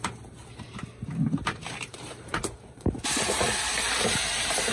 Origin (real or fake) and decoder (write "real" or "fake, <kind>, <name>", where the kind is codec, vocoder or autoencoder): fake, vocoder, BigVGAN v2